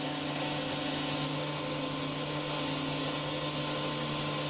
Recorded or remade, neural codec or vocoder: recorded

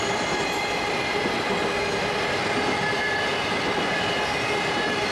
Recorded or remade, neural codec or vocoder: recorded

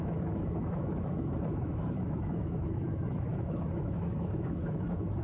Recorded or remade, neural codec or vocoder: remade, autoencoder, DAC-VAE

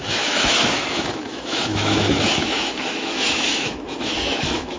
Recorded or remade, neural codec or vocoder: remade, autoencoder, DAC-VAE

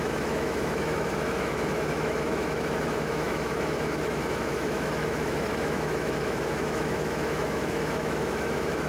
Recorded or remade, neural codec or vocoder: remade, autoencoder, DAC-VAE